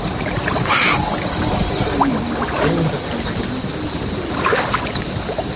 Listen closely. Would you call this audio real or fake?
real